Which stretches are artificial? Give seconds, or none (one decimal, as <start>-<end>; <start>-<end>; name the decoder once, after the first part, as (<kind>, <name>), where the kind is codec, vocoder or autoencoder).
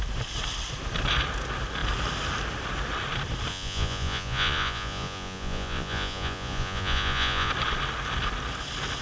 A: 3.5-7.5 (vocoder, Vocos)